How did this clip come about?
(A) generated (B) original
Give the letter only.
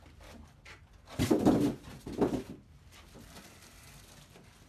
B